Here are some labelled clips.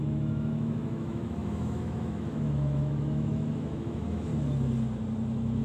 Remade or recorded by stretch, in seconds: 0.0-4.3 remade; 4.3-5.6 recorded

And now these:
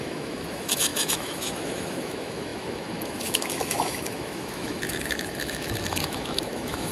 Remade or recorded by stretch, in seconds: 0.0-6.9 remade

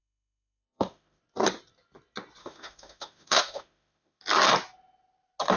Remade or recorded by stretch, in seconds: 0.0-1.2 remade; 1.2-2.4 recorded; 2.4-4.2 remade; 4.2-5.6 recorded

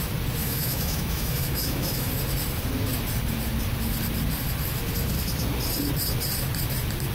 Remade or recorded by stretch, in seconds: 0.0-0.4 recorded; 0.4-2.1 remade; 2.1-7.1 recorded

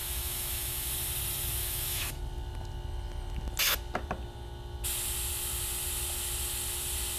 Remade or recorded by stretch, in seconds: 0.0-0.9 remade; 0.9-1.6 recorded; 1.6-2.2 remade; 2.2-7.2 recorded